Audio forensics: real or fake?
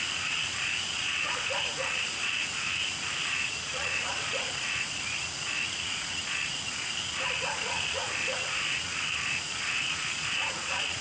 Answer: fake